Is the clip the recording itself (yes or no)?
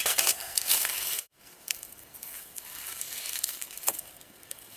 no